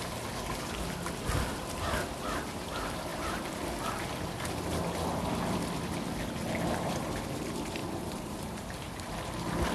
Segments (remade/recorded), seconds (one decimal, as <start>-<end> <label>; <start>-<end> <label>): 0.0-3.1 recorded; 3.1-3.6 remade; 3.6-7.8 recorded; 7.8-9.0 remade; 9.0-9.7 recorded